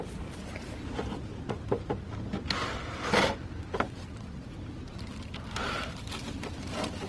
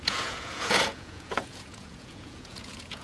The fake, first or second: second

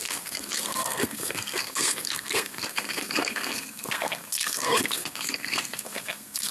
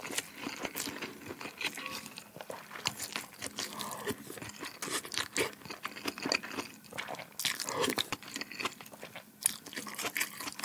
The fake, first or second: first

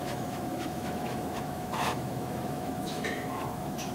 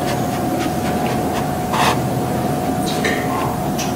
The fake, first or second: first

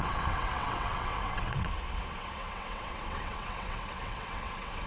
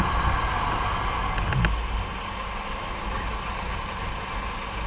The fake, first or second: first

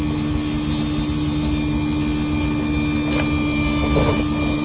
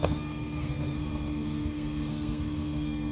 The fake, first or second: second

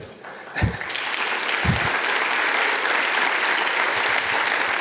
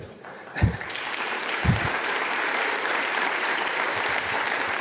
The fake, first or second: second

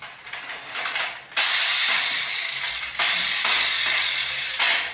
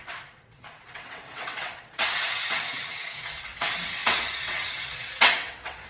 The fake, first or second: second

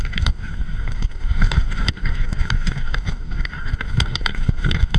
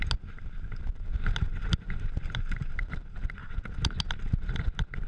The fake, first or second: first